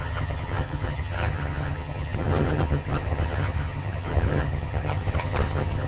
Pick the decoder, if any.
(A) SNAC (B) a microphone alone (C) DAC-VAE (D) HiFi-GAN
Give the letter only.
D